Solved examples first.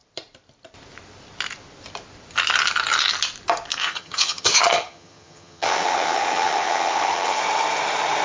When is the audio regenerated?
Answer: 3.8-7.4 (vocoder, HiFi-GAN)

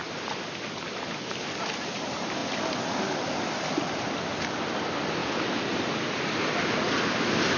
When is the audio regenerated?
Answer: none